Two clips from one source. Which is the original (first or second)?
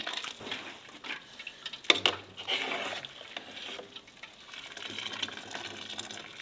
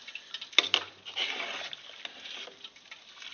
first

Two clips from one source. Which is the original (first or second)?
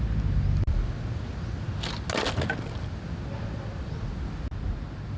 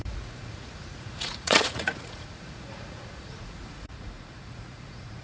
first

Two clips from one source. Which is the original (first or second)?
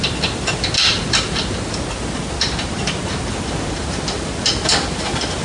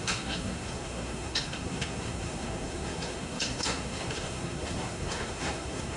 first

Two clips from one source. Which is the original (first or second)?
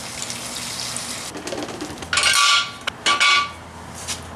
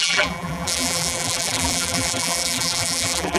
first